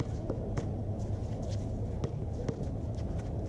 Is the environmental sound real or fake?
real